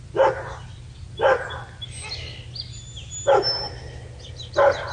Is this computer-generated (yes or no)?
no